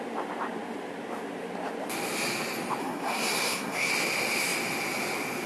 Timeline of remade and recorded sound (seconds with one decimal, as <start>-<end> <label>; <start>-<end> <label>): 0.0-2.8 recorded; 2.8-3.9 remade; 3.9-5.5 recorded